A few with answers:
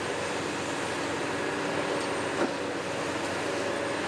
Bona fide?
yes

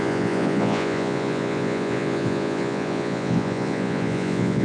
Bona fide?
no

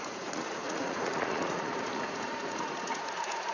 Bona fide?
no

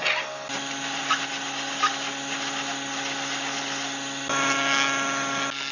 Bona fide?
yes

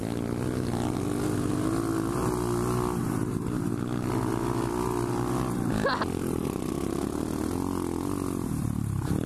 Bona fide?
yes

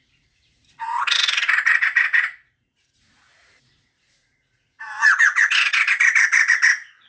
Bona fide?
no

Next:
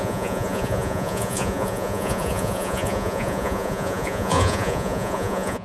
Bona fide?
no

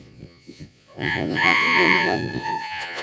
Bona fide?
no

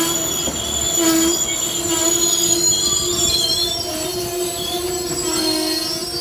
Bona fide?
yes